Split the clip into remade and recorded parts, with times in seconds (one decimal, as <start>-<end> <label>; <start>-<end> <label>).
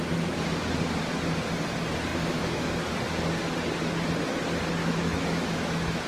0.0-2.1 recorded; 2.1-2.9 remade; 2.9-4.8 recorded; 4.8-6.1 remade